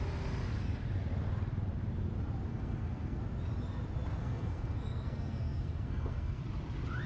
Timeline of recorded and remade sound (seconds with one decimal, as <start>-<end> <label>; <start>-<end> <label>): 0.0-2.5 recorded; 2.5-3.2 remade; 3.2-4.2 recorded; 4.2-6.4 remade; 6.4-7.1 recorded